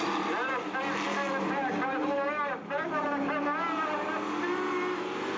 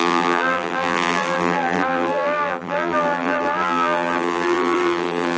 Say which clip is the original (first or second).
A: first